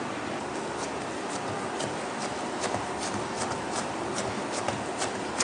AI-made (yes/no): no